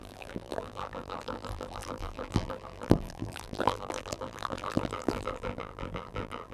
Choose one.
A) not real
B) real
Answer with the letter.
A